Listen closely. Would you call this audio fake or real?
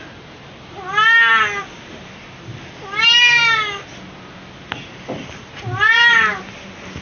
real